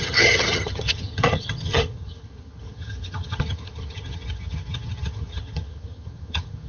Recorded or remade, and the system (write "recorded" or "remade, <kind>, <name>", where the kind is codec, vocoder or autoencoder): remade, vocoder, HiFi-GAN